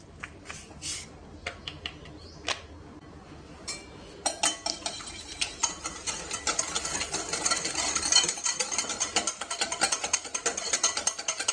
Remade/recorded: recorded